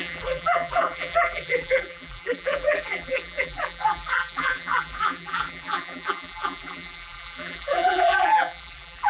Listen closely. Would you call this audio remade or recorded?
remade